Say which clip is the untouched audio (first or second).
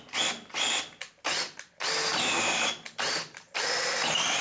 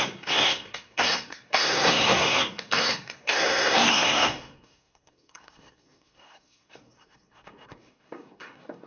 first